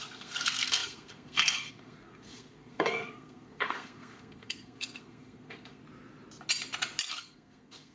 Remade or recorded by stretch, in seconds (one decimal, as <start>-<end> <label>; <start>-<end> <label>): 0.0-5.8 remade; 5.8-7.1 recorded; 7.1-7.9 remade